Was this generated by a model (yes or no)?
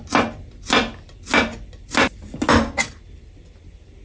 no